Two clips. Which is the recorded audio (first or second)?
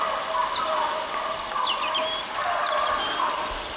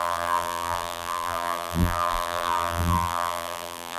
first